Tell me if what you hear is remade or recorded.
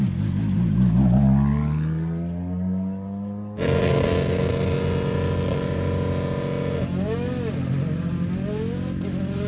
recorded